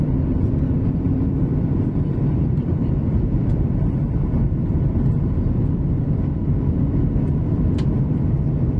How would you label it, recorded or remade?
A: remade